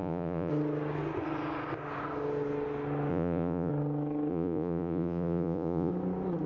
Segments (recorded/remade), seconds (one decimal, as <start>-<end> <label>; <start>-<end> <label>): 0.0-0.5 remade; 0.5-3.1 recorded; 3.1-3.7 remade; 3.7-4.3 recorded; 4.3-5.9 remade; 5.9-6.5 recorded